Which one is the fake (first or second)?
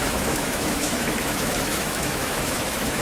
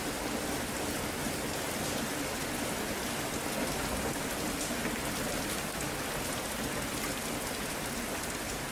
first